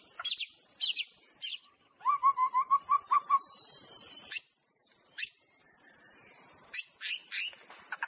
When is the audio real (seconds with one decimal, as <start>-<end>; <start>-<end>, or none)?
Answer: 0.0-1.5; 2.0-8.1